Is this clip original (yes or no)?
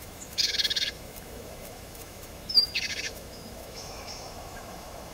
no